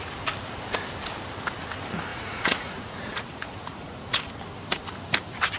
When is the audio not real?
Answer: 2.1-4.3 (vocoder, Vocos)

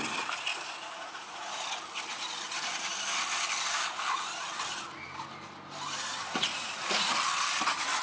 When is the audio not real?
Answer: 0.5-1.6 (vocoder, Vocos); 6.5-7.1